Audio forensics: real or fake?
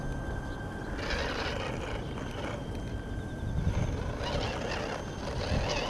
real